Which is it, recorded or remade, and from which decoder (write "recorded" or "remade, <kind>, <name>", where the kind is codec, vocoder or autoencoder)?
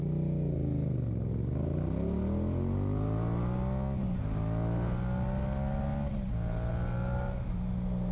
recorded